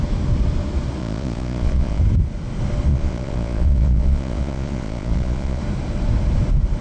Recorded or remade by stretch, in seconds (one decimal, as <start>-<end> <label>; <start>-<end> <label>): 0.0-1.0 recorded; 1.0-2.0 remade; 2.0-2.9 recorded; 2.9-5.6 remade; 5.6-6.8 recorded